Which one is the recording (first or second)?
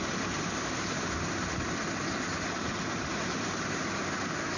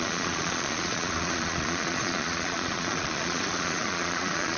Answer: first